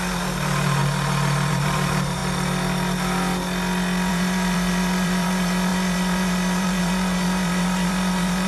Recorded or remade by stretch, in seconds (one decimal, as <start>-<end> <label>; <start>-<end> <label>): 0.0-0.8 remade; 0.8-1.5 recorded; 1.5-2.2 remade; 2.2-4.1 recorded; 4.1-8.5 remade